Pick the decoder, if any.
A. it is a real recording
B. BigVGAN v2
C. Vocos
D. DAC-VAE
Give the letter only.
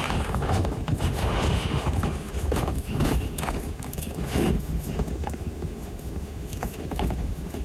D